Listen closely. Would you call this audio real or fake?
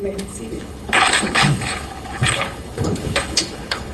fake